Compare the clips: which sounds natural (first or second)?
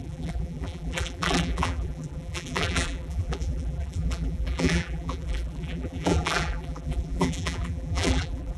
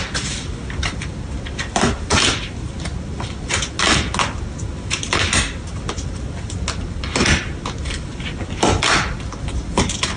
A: second